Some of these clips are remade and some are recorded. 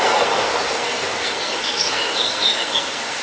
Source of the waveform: remade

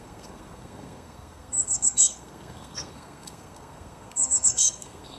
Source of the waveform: remade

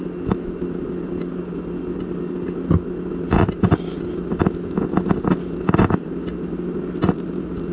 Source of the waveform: recorded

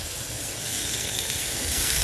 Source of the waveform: remade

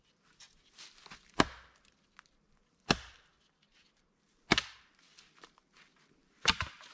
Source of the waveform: recorded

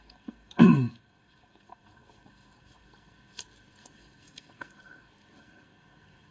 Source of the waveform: remade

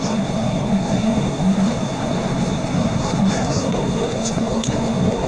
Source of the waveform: remade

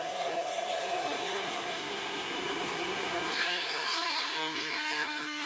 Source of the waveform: remade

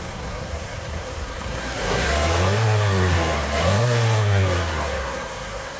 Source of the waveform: remade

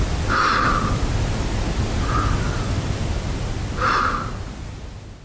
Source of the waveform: recorded